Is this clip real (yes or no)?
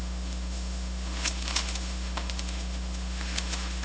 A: no